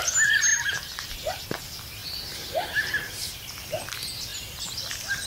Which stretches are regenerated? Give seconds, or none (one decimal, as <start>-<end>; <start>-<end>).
none